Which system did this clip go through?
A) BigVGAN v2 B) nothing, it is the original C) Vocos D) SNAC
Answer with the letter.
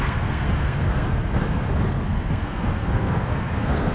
D